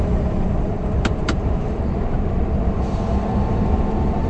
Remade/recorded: remade